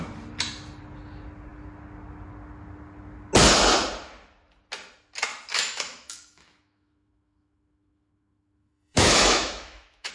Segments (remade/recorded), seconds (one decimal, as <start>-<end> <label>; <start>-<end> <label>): 0.0-5.5 recorded; 5.5-10.1 remade